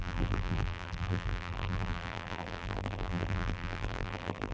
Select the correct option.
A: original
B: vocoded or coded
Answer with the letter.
B